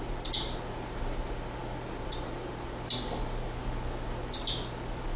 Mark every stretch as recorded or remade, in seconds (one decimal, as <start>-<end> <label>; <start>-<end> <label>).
0.0-5.2 recorded